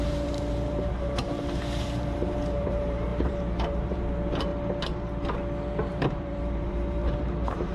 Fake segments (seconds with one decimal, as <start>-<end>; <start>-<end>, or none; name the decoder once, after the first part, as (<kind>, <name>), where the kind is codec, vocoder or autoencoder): 0.0-4.5 (vocoder, BigVGAN v2); 5.9-7.7